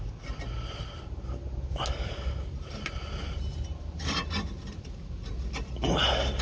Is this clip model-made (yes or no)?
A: no